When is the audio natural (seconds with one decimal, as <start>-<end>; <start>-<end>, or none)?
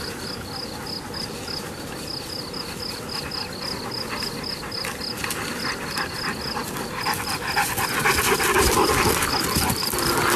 0.0-10.4